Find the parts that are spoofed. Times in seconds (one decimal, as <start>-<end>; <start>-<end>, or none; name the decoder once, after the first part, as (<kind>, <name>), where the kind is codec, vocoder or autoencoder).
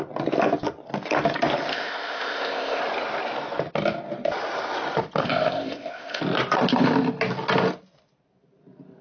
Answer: 1.7-2.8 (codec, ZipCodec); 5.2-6.2